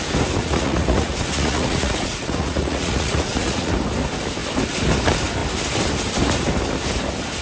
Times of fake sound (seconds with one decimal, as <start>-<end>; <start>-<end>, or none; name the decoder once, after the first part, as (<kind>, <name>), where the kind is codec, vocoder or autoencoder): 0.4-3.7 (vocoder, Vocos)